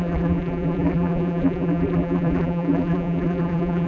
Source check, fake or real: fake